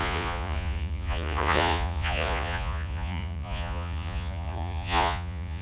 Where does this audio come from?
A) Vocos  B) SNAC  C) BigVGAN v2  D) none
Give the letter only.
A